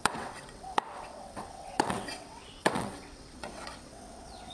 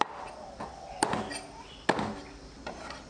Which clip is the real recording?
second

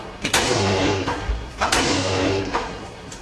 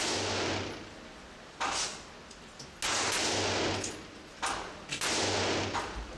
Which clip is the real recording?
second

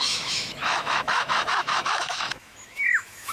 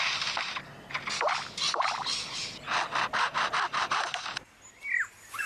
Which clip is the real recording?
second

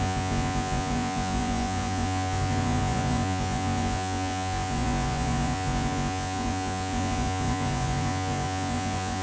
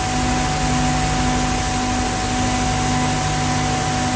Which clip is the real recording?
second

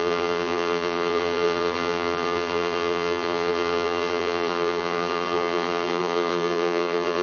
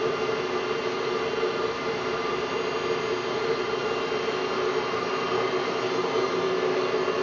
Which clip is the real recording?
second